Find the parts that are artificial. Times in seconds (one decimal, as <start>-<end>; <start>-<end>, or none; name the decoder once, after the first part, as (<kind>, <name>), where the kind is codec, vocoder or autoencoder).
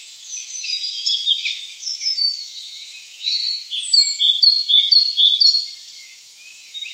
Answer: 0.0-3.4 (autoencoder, DAC-VAE); 6.0-6.9